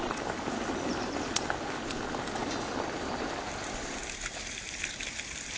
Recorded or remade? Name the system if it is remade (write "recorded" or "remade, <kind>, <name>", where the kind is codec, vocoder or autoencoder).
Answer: recorded